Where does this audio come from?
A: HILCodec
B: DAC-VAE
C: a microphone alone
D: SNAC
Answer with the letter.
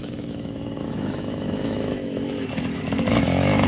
B